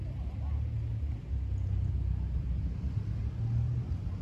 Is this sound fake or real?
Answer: real